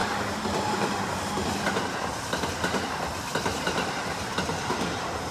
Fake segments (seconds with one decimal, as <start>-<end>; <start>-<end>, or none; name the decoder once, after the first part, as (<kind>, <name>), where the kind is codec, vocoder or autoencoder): none